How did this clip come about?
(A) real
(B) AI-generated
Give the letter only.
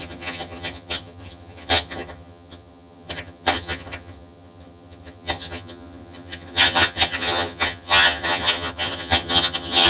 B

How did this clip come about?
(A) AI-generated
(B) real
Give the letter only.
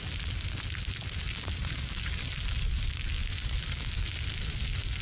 B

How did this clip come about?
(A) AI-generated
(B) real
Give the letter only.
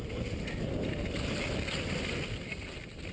B